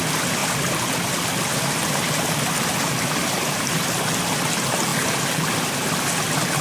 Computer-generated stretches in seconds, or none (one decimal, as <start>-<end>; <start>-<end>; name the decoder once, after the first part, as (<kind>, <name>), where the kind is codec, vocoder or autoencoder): none